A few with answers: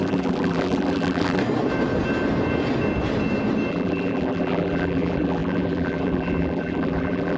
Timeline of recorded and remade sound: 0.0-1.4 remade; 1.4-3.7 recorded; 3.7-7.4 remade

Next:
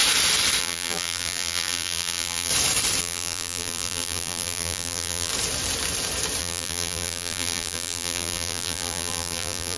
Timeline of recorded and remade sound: 0.0-0.6 recorded; 0.6-2.5 remade; 2.5-3.0 recorded; 3.0-5.3 remade; 5.3-6.4 recorded; 6.4-9.8 remade